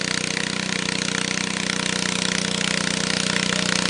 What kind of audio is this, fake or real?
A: real